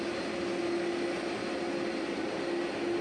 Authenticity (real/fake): real